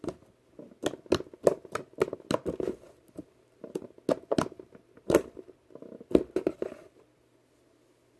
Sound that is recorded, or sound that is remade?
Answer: recorded